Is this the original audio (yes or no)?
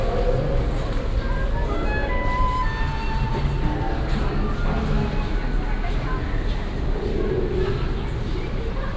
yes